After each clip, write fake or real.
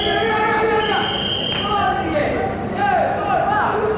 real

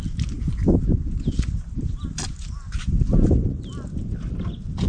real